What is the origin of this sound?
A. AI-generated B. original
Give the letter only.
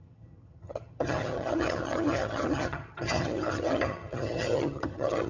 A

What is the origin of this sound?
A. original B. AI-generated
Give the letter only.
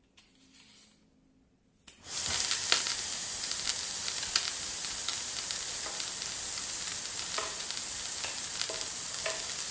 A